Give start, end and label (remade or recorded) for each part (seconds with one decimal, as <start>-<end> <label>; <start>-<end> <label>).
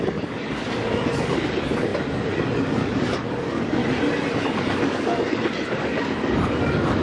0.0-3.8 remade; 3.8-4.4 recorded; 4.4-7.0 remade